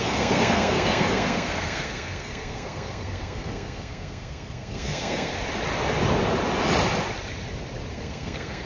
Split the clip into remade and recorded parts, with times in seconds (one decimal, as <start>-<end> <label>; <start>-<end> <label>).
0.0-5.3 remade; 5.3-7.9 recorded; 7.9-8.7 remade